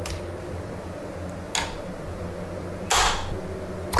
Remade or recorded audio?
recorded